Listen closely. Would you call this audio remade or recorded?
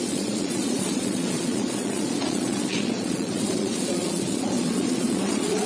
remade